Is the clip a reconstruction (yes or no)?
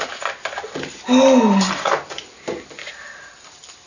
no